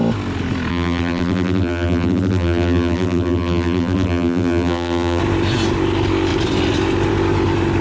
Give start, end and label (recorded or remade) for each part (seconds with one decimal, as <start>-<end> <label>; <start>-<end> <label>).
0.0-0.7 recorded; 0.7-5.2 remade; 5.2-7.8 recorded